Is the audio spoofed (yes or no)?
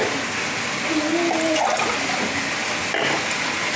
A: no